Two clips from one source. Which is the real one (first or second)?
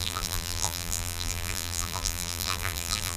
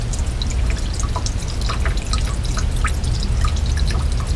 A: second